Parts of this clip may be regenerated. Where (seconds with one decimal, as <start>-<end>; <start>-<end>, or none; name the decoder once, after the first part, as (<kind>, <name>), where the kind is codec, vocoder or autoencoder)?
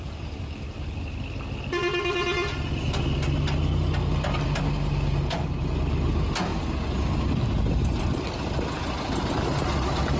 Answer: none